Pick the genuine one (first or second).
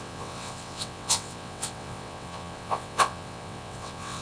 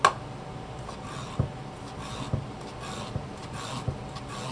second